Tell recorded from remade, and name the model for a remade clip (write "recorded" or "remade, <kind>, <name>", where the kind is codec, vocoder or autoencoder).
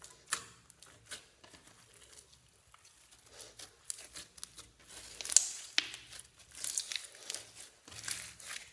recorded